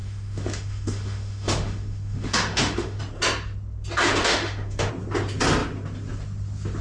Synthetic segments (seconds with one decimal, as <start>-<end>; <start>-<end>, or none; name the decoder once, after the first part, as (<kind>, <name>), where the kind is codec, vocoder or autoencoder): 0.0-3.0 (autoencoder, DAC-VAE); 4.2-4.9